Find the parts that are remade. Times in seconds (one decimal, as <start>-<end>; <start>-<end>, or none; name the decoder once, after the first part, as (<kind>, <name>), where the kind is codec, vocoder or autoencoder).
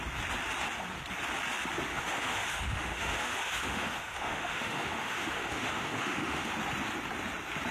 1.9-6.5 (autoencoder, DAC-VAE)